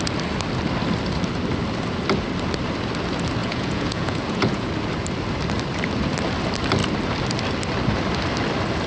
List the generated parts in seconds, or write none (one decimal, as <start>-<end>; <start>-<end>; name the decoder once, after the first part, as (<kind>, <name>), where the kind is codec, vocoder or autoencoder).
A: 3.4-4.7 (vocoder, Vocos)